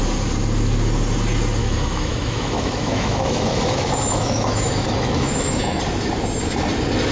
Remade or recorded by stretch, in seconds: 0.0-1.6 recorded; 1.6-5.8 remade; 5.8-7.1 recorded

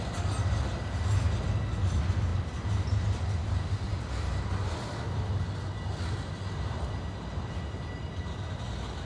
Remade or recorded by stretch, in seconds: 0.0-9.1 recorded

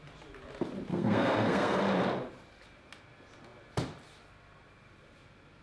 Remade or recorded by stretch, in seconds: 0.0-0.9 recorded; 0.9-1.8 remade; 1.8-5.6 recorded

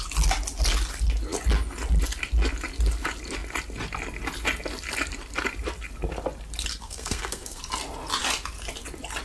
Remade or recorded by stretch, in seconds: 0.0-6.7 recorded; 6.7-7.6 remade; 7.6-9.2 recorded

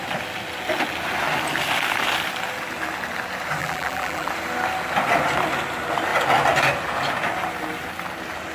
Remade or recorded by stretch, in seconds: 0.0-3.6 recorded; 3.6-4.3 remade; 4.3-8.5 recorded

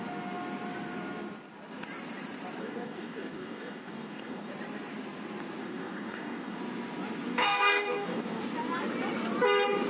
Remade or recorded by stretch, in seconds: 0.0-2.6 recorded; 2.6-4.5 remade; 4.5-5.6 recorded; 5.6-6.6 remade; 6.6-7.3 recorded; 7.3-8.4 remade; 8.4-9.9 recorded

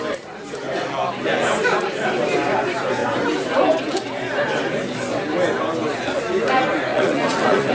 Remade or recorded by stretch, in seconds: 0.0-6.9 recorded; 6.9-7.7 remade